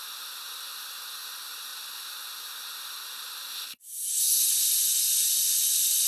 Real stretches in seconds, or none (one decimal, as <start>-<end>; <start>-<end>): 0.0-6.1